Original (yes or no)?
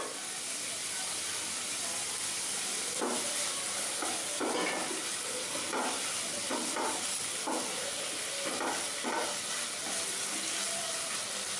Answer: yes